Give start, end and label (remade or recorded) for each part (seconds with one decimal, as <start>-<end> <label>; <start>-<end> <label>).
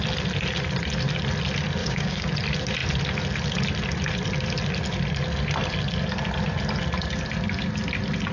0.0-1.8 recorded; 1.8-2.3 remade; 2.3-8.3 recorded